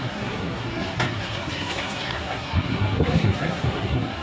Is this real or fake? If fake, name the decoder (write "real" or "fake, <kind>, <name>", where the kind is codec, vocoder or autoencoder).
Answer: fake, codec, SNAC